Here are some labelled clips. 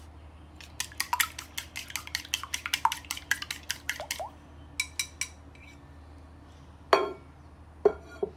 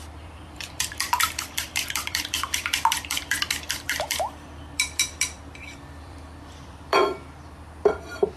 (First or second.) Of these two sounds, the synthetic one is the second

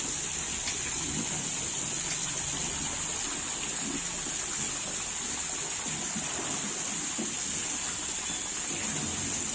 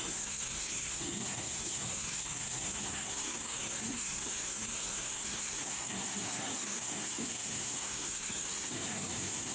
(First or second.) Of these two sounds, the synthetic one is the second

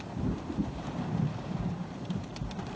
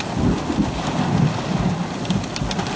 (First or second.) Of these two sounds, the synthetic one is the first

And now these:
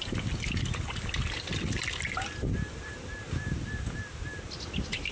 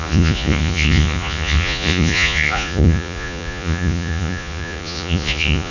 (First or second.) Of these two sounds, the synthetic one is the second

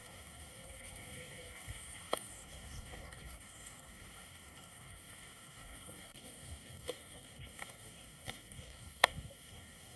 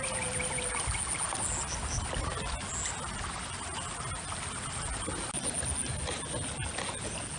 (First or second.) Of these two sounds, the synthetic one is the first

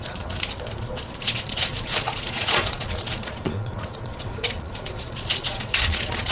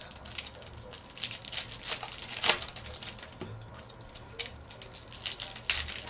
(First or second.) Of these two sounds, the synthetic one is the first